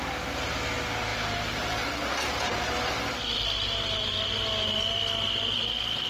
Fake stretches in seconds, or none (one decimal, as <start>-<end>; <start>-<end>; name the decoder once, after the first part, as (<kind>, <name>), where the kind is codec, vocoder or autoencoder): none